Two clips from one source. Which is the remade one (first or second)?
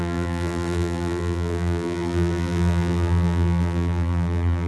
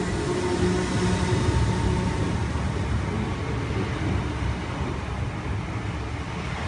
first